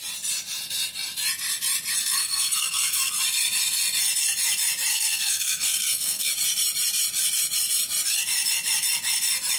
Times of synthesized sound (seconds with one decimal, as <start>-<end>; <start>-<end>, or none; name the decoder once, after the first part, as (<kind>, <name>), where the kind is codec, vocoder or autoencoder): 2.2-3.1 (codec, SNAC); 4.9-6.3